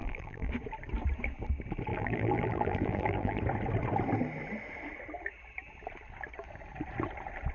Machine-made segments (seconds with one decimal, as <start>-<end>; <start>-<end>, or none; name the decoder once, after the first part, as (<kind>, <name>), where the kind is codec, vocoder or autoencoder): 0.0-0.5 (vocoder, BigVGAN v2); 1.9-3.4